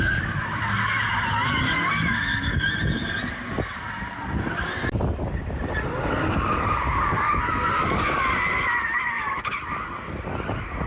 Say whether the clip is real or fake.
real